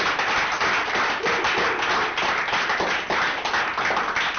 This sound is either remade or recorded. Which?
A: recorded